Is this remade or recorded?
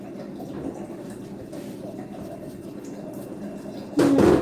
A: recorded